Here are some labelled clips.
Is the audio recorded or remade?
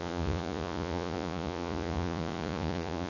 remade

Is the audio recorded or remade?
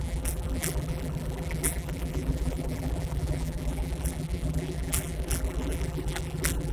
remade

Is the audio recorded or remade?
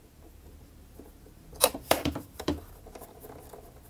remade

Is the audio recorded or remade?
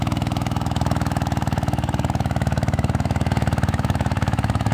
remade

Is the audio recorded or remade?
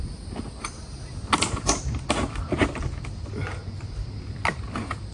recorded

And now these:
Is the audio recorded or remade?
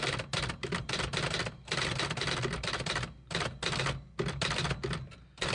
recorded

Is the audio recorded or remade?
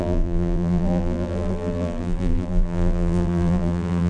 remade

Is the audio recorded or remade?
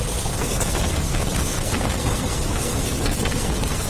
remade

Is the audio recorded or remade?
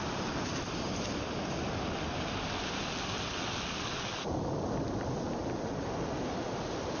recorded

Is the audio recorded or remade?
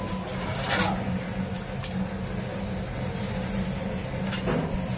recorded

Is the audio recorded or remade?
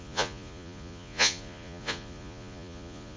remade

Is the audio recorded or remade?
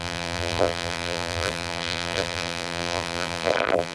remade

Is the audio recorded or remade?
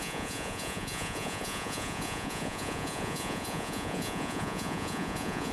remade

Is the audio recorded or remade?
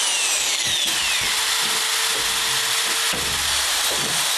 recorded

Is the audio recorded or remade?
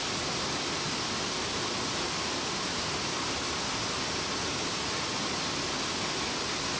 recorded